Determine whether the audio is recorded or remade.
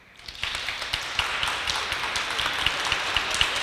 recorded